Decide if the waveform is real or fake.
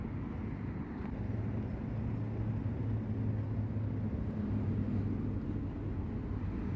real